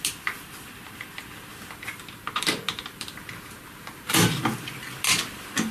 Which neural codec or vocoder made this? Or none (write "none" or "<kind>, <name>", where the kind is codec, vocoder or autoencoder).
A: none